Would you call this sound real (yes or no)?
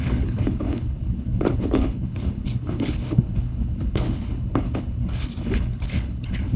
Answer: no